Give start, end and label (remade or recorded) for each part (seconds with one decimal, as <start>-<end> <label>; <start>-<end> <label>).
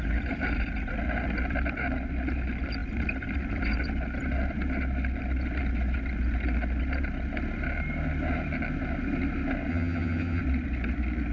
0.0-9.7 recorded; 9.7-10.4 remade; 10.4-11.3 recorded